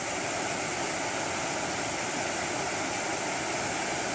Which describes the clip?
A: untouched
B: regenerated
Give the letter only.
A